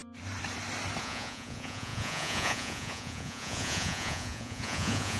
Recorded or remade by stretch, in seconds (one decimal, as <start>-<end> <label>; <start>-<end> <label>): 0.0-1.0 recorded; 1.0-5.2 remade